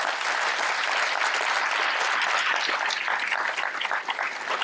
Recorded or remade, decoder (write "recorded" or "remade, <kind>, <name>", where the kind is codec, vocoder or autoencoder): recorded